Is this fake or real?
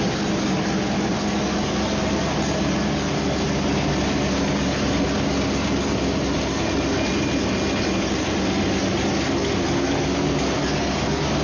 real